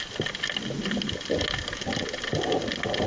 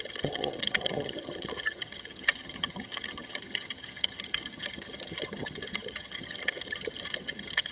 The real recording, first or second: first